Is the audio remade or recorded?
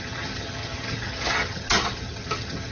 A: remade